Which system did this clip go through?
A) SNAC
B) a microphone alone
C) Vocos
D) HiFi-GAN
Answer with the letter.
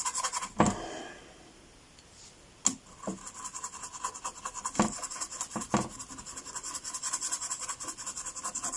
B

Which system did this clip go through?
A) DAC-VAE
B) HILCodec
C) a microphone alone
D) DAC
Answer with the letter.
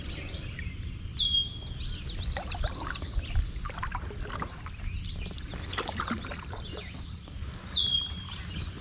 C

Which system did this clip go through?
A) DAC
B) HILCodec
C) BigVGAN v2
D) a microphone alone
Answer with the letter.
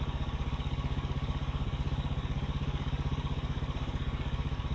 A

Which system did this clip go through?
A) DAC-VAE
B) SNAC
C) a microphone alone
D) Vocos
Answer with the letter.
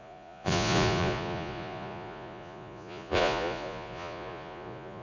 D